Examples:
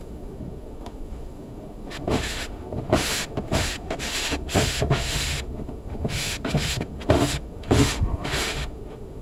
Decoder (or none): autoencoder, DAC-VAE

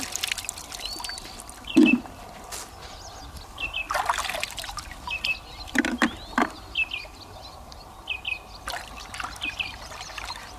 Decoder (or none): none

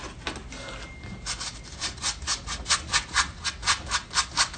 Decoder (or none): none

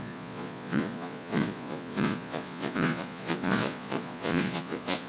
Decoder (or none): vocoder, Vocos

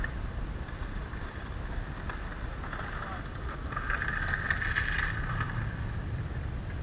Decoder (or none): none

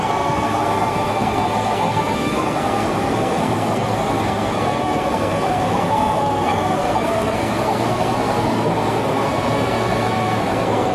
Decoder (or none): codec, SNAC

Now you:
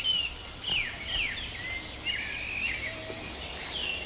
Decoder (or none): none